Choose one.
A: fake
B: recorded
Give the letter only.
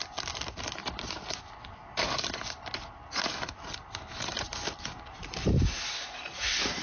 B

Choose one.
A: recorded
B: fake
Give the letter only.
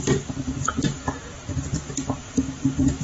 A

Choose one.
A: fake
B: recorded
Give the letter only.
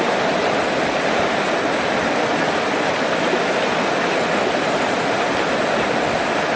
B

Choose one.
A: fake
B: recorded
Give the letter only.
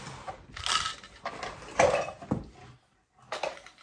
B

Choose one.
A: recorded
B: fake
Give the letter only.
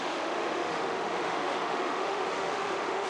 B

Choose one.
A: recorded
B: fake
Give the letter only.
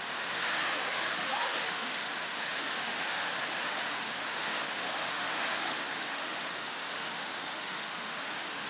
B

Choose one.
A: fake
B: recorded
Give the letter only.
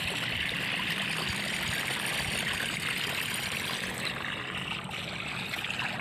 B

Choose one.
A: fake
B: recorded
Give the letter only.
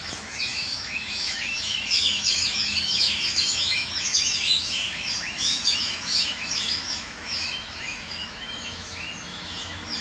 A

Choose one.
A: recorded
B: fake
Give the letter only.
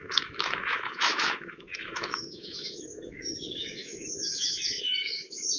B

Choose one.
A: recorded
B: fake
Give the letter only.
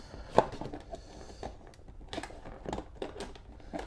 A